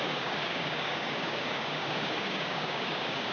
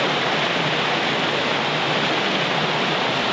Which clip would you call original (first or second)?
second